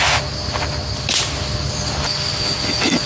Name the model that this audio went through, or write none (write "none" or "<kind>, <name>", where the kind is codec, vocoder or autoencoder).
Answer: none